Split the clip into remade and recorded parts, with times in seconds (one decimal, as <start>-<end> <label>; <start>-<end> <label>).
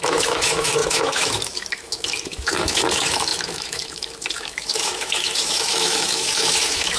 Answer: 0.0-7.0 remade